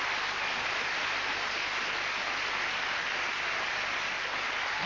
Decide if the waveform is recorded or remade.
recorded